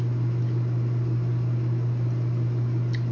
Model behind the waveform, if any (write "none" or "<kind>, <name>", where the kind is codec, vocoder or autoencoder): none